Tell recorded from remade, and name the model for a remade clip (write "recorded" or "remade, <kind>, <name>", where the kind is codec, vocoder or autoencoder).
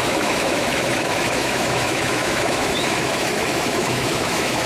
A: remade, autoencoder, DAC-VAE